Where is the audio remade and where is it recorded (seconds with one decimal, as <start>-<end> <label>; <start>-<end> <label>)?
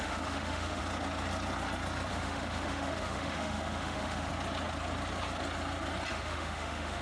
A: 0.0-0.8 remade; 0.8-2.1 recorded; 2.1-4.3 remade; 4.3-6.1 recorded; 6.1-7.0 remade